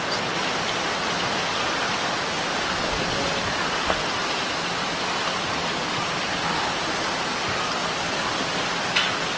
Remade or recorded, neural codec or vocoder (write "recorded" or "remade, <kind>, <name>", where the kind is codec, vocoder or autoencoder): recorded